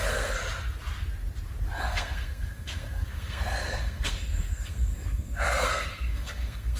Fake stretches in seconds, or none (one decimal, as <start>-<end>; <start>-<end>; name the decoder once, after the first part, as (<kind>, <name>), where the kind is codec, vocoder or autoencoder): 0.0-0.4 (codec, SNAC); 1.8-6.8